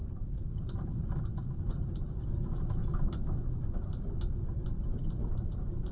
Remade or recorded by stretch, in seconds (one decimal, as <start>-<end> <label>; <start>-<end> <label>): 0.0-1.1 remade; 1.1-5.9 recorded